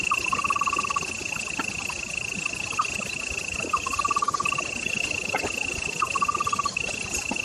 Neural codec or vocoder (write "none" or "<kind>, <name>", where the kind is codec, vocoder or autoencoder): none